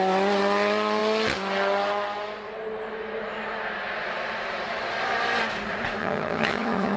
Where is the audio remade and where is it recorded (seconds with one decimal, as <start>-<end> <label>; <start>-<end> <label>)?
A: 0.0-6.0 recorded; 6.0-7.0 remade